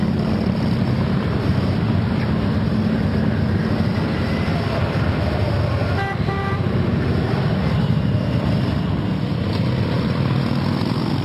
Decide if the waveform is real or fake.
real